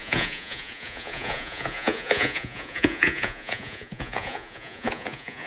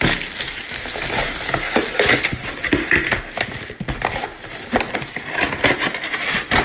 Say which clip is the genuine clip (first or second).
second